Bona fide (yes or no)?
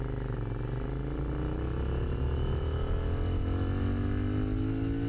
yes